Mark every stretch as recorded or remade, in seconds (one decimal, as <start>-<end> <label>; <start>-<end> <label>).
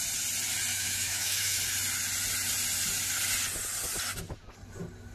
0.0-0.7 recorded; 0.7-1.6 remade; 1.6-5.1 recorded